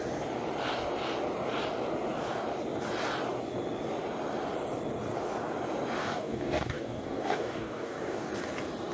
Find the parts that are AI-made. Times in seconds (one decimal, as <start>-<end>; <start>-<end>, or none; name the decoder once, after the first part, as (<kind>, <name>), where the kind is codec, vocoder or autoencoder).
6.0-8.3 (codec, DAC)